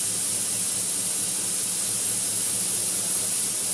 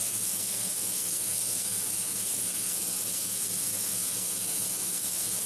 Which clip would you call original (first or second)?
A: first